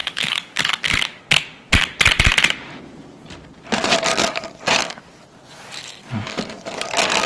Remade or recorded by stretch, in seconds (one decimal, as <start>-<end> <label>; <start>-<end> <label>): 0.0-1.2 remade; 1.2-4.1 recorded; 4.1-5.0 remade; 5.0-6.0 recorded; 6.0-7.3 remade